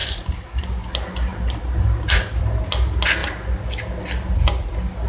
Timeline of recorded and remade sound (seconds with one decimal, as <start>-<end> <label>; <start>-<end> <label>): 0.0-5.1 recorded

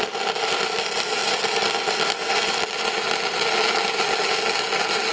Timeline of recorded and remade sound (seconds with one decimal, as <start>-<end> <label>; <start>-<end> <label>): 0.0-5.1 recorded

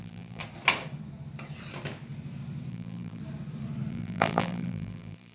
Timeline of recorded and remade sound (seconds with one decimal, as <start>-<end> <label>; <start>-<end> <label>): 0.0-0.4 remade; 0.4-2.7 recorded; 2.7-3.2 remade; 3.2-3.9 recorded; 3.9-5.3 remade